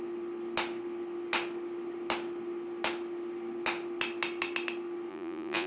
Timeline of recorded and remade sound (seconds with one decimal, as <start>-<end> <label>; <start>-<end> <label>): 0.0-5.1 recorded; 5.1-5.7 remade